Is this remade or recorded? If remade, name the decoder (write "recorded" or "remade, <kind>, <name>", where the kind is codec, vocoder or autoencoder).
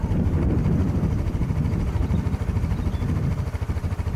recorded